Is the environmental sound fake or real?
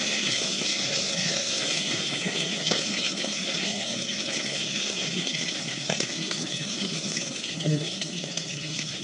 fake